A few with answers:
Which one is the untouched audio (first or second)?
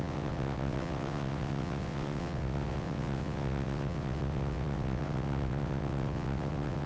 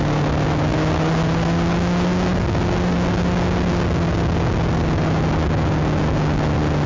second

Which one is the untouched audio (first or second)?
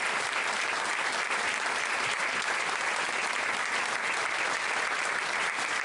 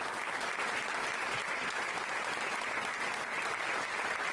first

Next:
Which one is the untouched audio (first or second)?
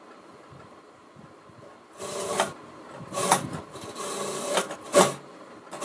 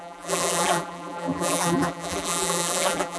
first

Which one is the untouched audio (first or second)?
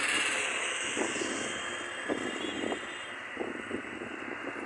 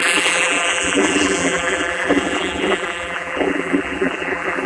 first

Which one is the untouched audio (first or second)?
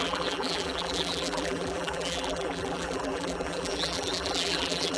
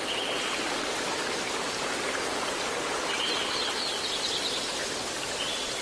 second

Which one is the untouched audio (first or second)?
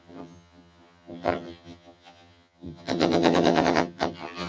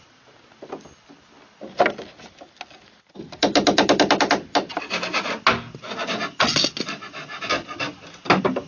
second